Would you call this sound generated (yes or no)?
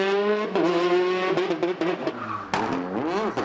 no